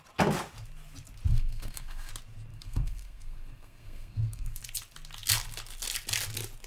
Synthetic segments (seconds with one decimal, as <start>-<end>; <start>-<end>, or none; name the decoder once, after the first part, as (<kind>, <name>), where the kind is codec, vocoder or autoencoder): 1.3-2.1 (codec, SNAC); 2.5-4.6